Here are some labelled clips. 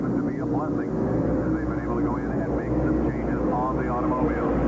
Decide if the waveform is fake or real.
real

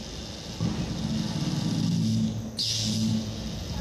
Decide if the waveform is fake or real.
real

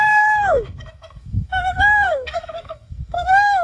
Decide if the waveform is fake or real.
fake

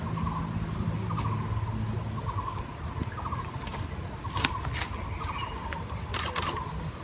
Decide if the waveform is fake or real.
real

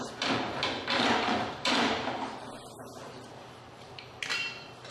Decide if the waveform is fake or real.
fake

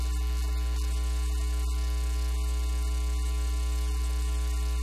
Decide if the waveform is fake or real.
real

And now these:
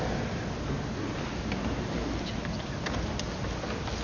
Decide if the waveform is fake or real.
real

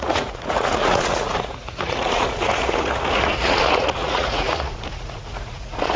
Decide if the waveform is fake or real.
fake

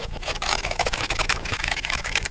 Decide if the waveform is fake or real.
fake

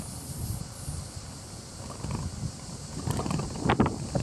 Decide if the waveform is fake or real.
real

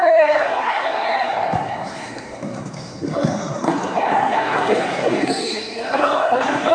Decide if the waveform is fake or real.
fake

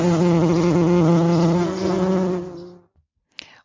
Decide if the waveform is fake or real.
real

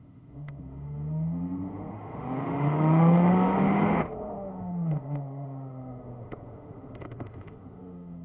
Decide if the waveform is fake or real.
fake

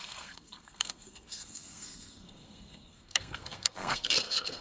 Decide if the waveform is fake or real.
fake